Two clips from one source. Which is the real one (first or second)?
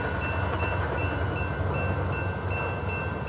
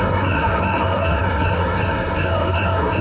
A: first